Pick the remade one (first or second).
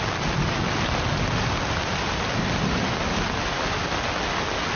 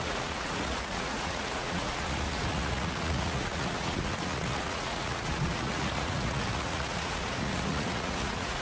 second